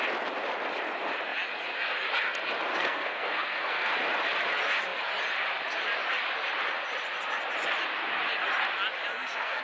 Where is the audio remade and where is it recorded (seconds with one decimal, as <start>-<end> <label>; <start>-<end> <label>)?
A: 0.0-2.7 recorded; 2.7-3.9 remade; 3.9-9.1 recorded; 9.1-9.6 remade